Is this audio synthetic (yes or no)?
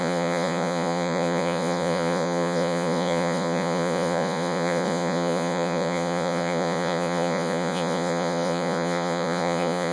yes